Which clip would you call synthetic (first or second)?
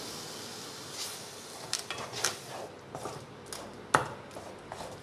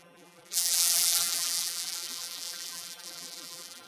second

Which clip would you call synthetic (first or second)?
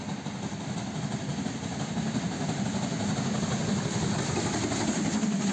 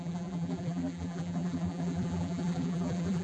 second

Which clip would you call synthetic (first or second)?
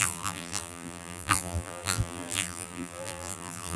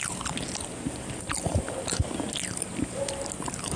first